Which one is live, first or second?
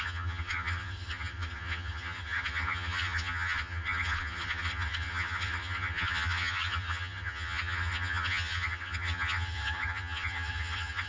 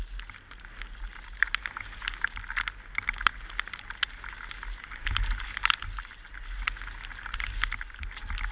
second